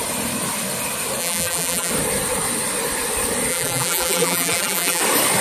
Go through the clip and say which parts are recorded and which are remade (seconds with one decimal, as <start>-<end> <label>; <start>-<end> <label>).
0.0-1.2 recorded; 1.2-1.9 remade; 1.9-3.5 recorded; 3.5-5.0 remade; 5.0-5.4 recorded